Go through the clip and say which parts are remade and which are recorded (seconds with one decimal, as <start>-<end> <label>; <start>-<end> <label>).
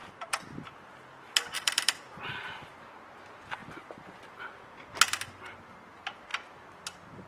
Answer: 0.0-2.9 remade; 2.9-6.3 recorded; 6.3-7.3 remade